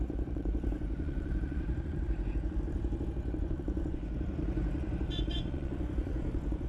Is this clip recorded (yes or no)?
no